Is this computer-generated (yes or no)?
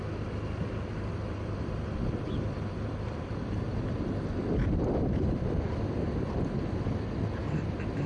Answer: yes